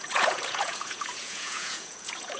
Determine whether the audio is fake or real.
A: fake